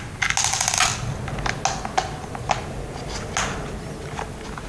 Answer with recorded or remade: recorded